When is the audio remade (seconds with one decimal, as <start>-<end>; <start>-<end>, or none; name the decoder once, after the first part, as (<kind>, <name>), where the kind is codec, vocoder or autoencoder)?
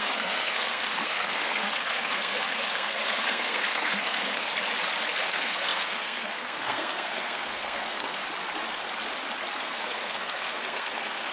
0.0-4.5 (codec, SNAC); 5.2-8.2; 9.5-11.3